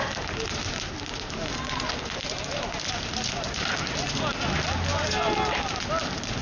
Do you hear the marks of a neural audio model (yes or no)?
no